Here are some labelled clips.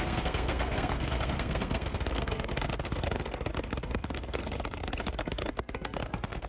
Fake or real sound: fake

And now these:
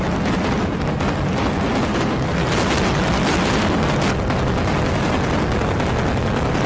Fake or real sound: real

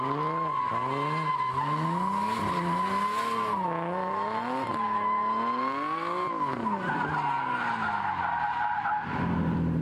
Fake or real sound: real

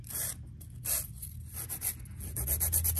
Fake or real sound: real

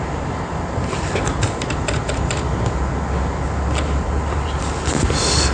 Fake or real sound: real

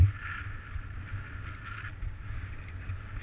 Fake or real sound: real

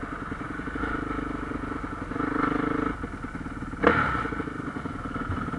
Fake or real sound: real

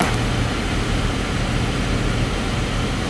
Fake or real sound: real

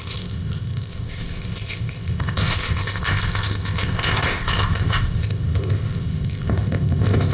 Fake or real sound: fake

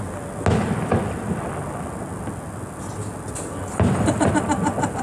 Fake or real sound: real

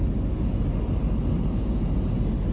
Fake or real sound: real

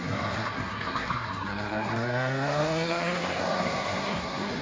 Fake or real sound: fake